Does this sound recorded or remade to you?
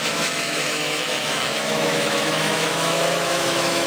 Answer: remade